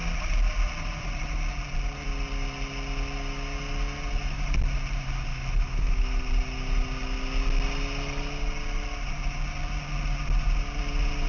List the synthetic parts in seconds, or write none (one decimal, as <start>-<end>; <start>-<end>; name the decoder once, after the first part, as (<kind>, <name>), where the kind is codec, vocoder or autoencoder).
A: 5.3-6.2 (autoencoder, DAC-VAE)